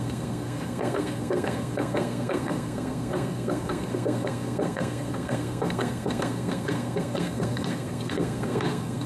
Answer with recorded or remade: remade